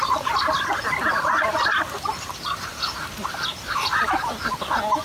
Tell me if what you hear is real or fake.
real